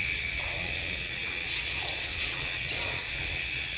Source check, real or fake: fake